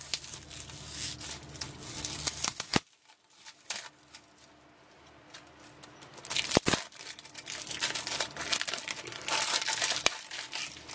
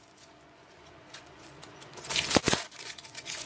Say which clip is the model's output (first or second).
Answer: second